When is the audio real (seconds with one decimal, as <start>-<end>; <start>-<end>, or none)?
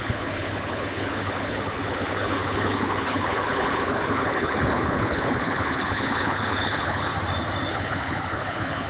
7.1-7.7